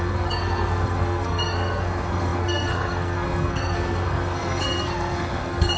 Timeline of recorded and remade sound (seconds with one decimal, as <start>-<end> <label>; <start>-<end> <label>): 0.0-5.8 remade